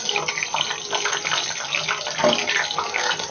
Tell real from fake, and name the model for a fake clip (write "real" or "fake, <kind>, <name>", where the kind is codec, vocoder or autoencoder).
real